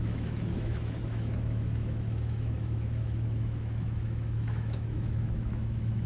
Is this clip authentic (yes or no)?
no